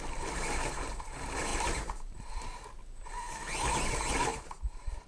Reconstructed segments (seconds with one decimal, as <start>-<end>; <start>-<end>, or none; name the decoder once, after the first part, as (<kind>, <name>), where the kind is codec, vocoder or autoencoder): 4.3-5.1 (vocoder, BigVGAN v2)